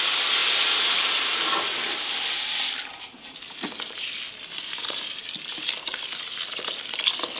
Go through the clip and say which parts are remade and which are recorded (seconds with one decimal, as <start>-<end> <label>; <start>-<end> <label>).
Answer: 0.0-0.4 remade; 0.4-4.8 recorded; 4.8-7.4 remade